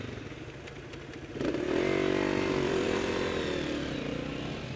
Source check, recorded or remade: recorded